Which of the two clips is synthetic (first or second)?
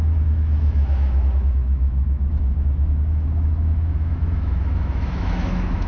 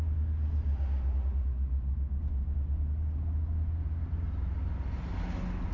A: first